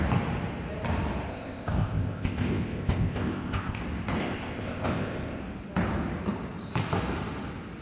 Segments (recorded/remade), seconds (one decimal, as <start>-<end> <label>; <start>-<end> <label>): 0.0-1.3 recorded; 1.3-3.8 remade; 3.8-4.2 recorded; 4.2-5.4 remade; 5.4-7.8 recorded